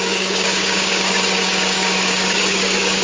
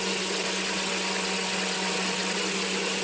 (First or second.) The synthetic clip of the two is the first